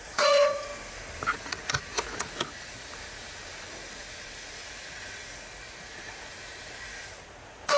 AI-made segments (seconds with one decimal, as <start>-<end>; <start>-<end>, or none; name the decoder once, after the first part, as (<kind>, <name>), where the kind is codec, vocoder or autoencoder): 0.0-0.7 (vocoder, Vocos); 1.3-3.4; 3.9-7.8